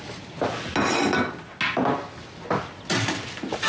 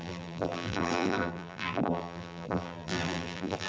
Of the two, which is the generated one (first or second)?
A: second